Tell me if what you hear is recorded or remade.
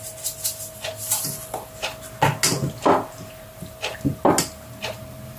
recorded